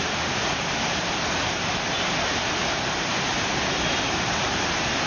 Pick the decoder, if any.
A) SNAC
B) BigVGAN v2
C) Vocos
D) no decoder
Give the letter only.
B